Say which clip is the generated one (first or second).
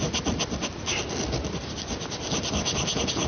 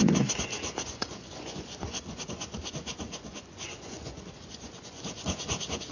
second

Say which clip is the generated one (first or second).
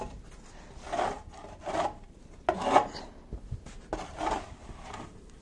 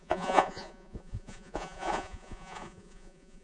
second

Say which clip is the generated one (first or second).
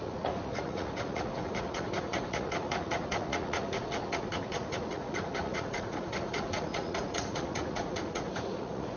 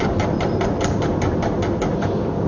first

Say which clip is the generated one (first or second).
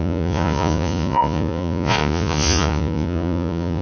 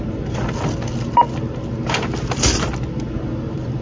first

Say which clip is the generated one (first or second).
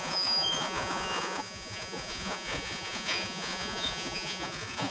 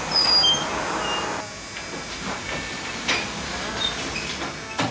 first